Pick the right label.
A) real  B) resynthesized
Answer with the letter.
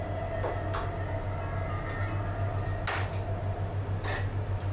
A